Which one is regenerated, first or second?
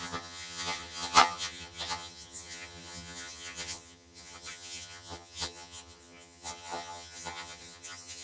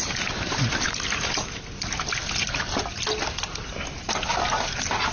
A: first